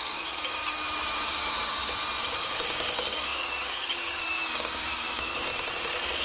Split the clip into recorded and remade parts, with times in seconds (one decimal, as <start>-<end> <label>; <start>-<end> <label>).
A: 0.0-0.6 remade; 0.6-1.1 recorded; 1.1-1.8 remade; 1.8-2.4 recorded; 2.4-5.5 remade; 5.5-6.2 recorded